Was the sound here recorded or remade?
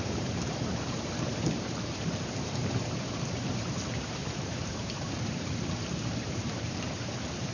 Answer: remade